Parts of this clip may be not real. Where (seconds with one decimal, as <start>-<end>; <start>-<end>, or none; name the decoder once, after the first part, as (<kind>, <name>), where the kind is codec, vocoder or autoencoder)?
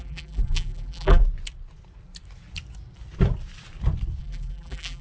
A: 0.0-1.2 (vocoder, BigVGAN v2); 4.2-5.0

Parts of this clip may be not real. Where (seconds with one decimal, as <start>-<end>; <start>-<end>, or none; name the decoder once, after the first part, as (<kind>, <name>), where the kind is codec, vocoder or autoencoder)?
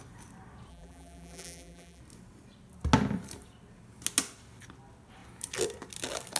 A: 0.7-2.0 (vocoder, BigVGAN v2)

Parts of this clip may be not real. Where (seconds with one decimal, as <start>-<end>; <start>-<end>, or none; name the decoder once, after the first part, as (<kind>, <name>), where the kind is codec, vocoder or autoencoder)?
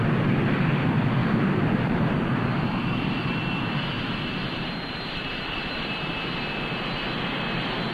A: 1.2-5.9 (vocoder, BigVGAN v2)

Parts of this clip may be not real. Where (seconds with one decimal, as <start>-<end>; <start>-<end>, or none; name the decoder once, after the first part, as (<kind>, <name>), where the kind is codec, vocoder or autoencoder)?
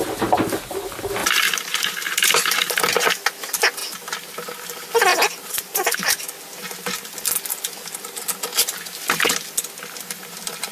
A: 1.2-2.8 (vocoder, BigVGAN v2); 5.1-6.3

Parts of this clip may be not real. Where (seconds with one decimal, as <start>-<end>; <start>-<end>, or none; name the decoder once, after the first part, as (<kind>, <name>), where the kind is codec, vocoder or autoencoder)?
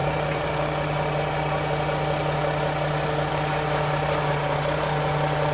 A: none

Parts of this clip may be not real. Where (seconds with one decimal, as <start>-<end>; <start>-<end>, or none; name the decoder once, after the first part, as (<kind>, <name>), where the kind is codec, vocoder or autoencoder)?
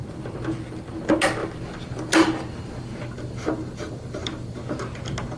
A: 1.4-4.6 (vocoder, BigVGAN v2)